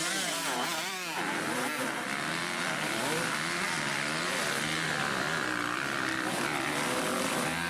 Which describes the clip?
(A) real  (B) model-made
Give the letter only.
B